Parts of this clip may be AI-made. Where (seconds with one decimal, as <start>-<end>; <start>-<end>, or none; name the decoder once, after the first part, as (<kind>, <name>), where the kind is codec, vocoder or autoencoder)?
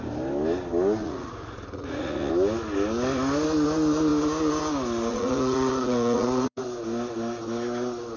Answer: 1.0-2.3 (vocoder, Vocos); 5.1-6.6